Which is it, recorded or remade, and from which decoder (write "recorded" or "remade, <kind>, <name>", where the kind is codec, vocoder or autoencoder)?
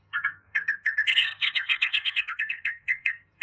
remade, codec, SNAC